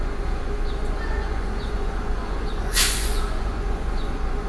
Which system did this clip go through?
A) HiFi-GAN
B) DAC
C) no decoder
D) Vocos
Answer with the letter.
D